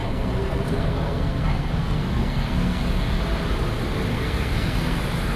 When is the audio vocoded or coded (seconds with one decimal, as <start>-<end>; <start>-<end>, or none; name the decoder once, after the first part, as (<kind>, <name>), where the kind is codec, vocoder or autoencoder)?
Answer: 0.0-3.2 (codec, SNAC); 4.1-5.0